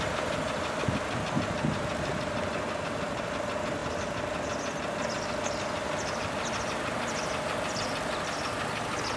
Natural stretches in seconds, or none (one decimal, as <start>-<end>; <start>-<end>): 0.0-9.2

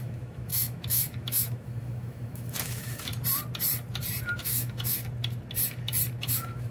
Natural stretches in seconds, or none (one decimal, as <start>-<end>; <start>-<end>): 3.1-4.4; 5.0-6.2

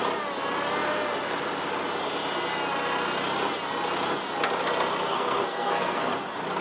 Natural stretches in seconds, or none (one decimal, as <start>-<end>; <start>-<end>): 0.0-5.0; 6.1-6.6

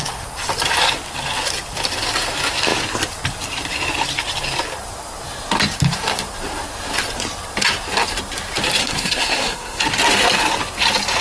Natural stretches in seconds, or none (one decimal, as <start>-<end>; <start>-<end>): 0.0-8.8; 9.8-11.2

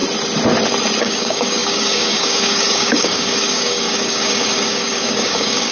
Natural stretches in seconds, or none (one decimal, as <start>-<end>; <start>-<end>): 0.0-1.0

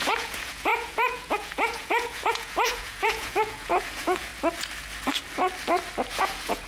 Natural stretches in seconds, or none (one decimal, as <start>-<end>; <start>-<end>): 4.3-6.1